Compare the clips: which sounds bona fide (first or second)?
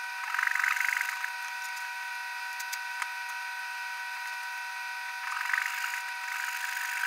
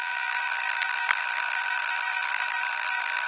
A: first